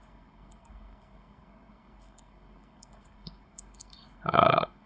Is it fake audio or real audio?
fake